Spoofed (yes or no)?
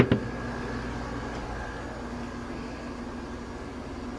no